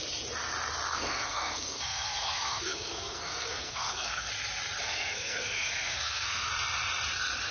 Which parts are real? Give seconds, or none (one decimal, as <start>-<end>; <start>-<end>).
0.0-0.9; 4.3-4.8; 6.5-7.5